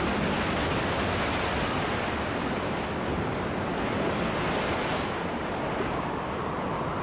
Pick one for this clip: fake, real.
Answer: real